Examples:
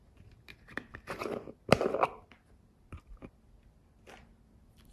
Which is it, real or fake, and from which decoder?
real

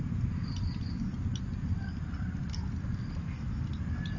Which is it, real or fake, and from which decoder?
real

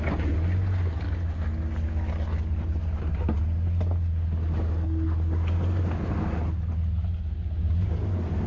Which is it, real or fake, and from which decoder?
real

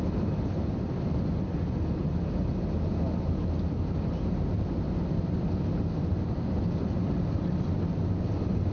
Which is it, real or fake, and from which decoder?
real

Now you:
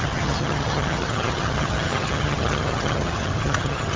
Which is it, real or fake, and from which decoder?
fake, vocoder, HiFi-GAN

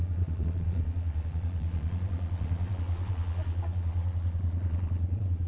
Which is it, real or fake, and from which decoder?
fake, vocoder, Vocos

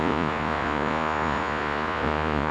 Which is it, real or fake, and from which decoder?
fake, vocoder, Vocos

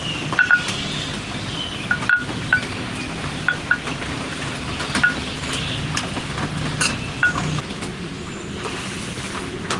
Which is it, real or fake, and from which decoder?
real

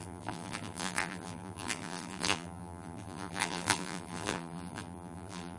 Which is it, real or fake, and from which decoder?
fake, vocoder, BigVGAN v2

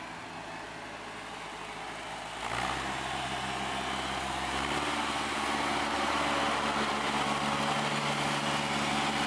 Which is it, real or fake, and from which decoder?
real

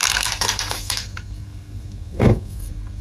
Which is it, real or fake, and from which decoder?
fake, codec, SNAC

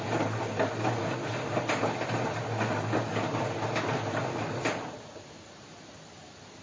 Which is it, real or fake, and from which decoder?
real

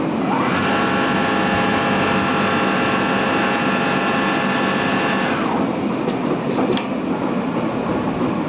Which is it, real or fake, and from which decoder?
real